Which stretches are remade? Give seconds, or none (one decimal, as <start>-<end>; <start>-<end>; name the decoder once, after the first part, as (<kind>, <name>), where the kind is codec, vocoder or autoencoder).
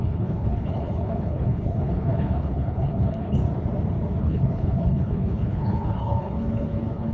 0.0-3.4 (codec, HILCodec); 4.2-7.1